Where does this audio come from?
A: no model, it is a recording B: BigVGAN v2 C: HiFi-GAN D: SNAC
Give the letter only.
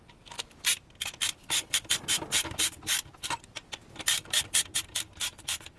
A